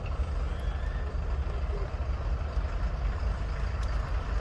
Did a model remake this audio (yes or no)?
no